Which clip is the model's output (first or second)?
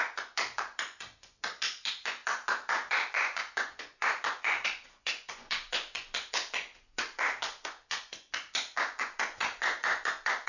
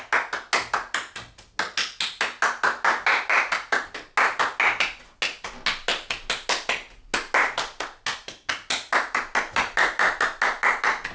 first